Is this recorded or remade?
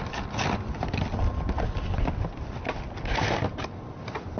recorded